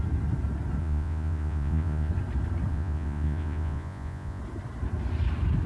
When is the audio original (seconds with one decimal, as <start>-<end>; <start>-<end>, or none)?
0.0-0.8; 2.1-2.7; 4.4-5.7